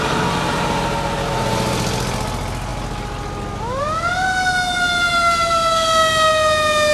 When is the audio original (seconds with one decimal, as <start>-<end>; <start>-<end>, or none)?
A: 0.0-6.9